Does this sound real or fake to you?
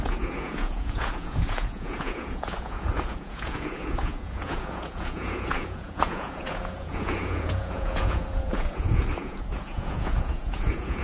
fake